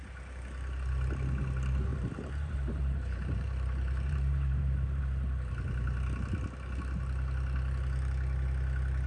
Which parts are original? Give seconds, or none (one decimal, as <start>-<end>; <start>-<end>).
0.0-1.9; 5.0-9.1